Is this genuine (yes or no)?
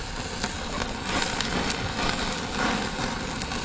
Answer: yes